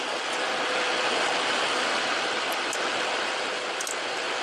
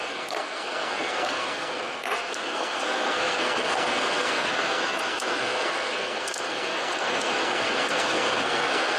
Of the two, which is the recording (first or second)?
first